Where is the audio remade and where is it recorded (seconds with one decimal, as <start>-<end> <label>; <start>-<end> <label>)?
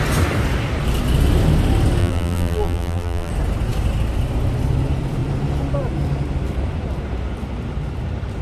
0.0-2.0 recorded; 2.0-3.3 remade; 3.3-8.4 recorded